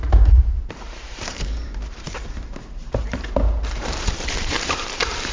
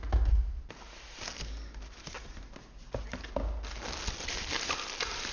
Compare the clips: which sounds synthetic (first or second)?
first